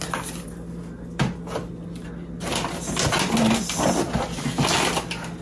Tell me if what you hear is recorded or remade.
recorded